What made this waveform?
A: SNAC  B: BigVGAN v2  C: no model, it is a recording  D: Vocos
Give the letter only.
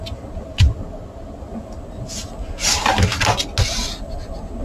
C